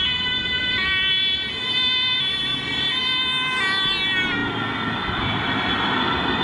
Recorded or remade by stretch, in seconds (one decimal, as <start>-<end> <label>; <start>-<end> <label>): 0.0-6.4 recorded